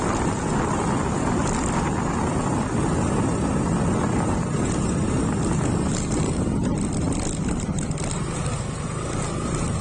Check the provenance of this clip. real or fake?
real